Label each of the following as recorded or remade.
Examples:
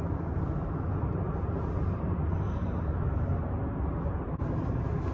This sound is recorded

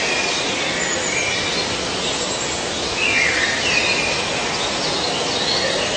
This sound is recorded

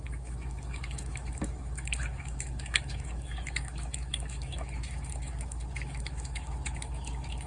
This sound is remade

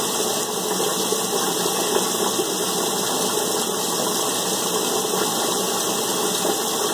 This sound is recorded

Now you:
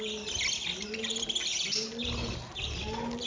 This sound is recorded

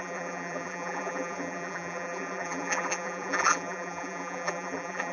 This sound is remade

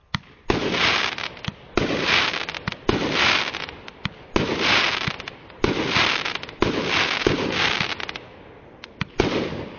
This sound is recorded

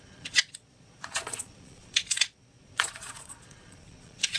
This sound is remade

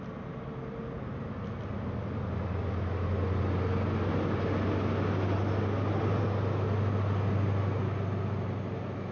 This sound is recorded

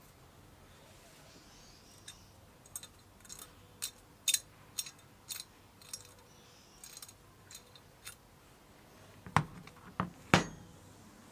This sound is recorded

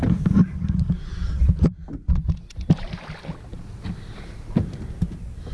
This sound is recorded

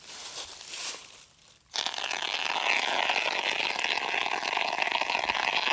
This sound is recorded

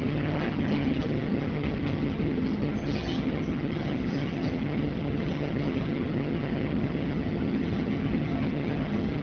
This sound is remade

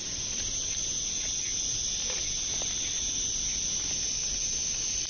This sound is recorded